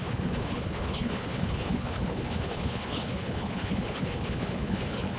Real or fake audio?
fake